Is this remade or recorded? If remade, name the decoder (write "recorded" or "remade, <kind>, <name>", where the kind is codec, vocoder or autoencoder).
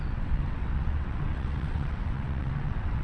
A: remade, vocoder, WaveNeXt